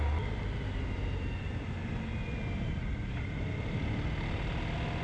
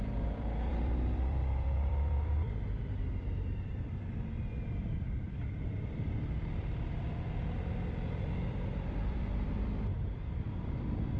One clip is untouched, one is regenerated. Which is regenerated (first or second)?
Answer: second